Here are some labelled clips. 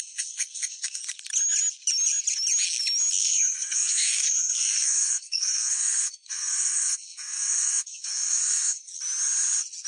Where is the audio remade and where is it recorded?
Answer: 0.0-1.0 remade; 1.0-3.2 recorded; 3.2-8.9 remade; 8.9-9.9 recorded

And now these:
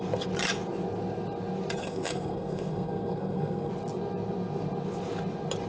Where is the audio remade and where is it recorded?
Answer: 0.0-1.8 recorded; 1.8-3.7 remade; 3.7-5.7 recorded

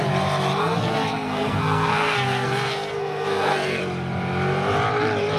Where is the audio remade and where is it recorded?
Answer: 0.0-0.6 recorded; 0.6-3.8 remade; 3.8-5.4 recorded